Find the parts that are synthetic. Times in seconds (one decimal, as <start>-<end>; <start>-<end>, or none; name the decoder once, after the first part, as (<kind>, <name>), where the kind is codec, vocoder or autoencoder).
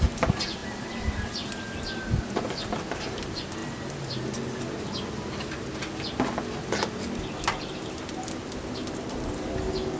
none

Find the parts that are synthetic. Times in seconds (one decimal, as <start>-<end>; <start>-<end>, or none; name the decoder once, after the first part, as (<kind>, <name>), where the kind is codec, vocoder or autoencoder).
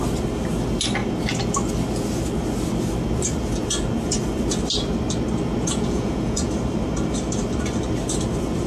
5.6-6.5 (vocoder, Vocos)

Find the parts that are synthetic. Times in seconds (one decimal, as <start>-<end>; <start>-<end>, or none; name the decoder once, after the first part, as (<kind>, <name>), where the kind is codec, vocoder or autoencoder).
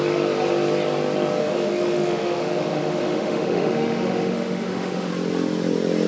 1.4-5.1 (autoencoder, DAC-VAE)